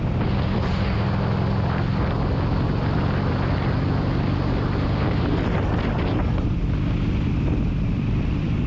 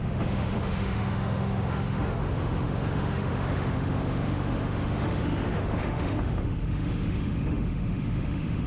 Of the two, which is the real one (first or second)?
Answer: first